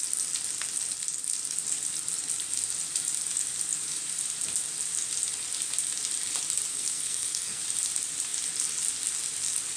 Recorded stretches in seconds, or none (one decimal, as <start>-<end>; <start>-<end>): 0.0-6.7; 7.6-9.8